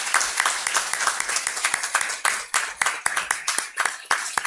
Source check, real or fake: real